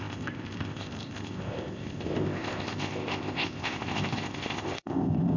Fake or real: fake